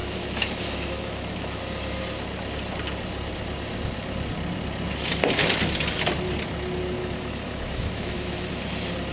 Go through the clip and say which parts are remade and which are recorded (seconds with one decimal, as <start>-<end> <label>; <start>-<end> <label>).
0.0-1.6 remade; 1.6-7.0 recorded; 7.0-8.5 remade; 8.5-9.1 recorded